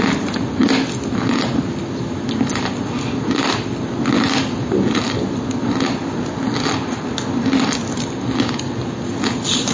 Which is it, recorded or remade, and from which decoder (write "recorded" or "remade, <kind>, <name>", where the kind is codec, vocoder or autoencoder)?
recorded